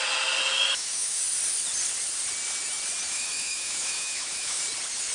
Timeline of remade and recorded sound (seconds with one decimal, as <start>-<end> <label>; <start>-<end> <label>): 0.0-0.5 recorded; 0.5-1.2 remade; 1.2-3.1 recorded; 3.1-4.6 remade; 4.6-5.1 recorded